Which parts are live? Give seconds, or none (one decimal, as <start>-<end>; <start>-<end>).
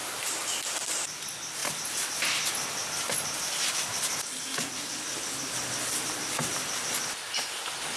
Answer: 0.0-8.0